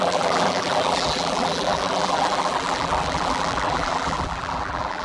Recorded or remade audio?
remade